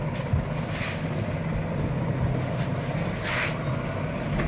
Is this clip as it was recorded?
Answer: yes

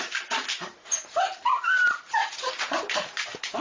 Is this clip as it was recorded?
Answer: no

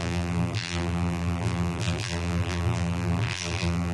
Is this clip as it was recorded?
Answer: no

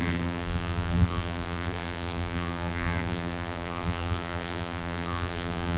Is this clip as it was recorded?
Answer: no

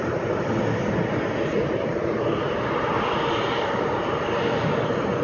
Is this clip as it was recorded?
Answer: yes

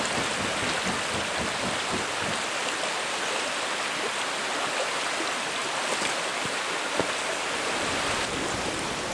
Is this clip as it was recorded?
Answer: yes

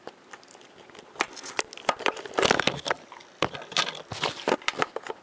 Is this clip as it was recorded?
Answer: yes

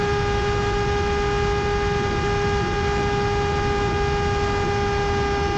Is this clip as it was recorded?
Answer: yes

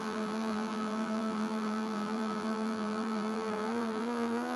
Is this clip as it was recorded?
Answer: no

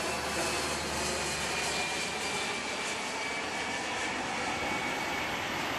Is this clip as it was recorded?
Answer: yes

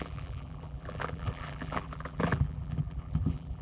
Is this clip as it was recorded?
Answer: no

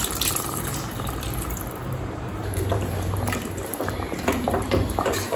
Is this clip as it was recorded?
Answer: no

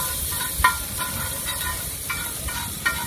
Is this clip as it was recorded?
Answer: yes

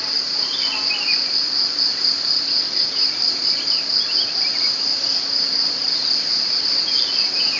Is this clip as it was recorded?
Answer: no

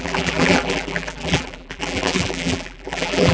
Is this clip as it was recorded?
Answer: no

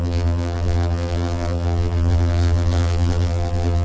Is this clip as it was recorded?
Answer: no